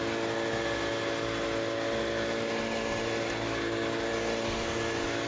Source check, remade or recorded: recorded